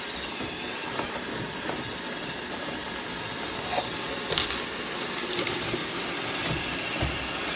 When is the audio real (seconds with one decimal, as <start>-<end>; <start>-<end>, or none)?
0.0-5.8